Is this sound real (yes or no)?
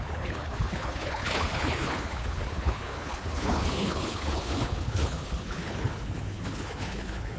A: no